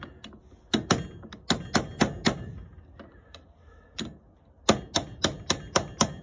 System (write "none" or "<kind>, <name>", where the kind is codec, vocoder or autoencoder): none